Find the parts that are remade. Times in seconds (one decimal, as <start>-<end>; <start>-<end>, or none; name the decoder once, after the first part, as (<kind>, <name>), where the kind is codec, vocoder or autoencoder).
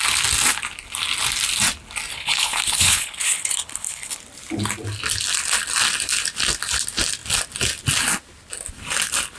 2.1-4.2 (codec, HILCodec)